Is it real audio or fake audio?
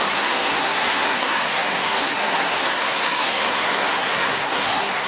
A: fake